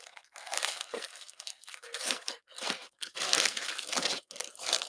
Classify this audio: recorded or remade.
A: remade